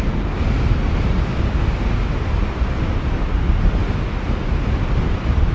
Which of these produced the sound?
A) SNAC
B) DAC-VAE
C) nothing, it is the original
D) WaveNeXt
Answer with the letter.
C